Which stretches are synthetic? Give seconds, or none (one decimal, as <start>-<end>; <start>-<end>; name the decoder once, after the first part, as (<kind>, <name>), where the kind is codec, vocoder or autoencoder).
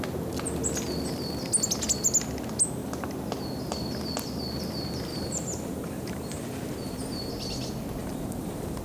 5.1-7.3 (vocoder, BigVGAN v2); 8.0-8.8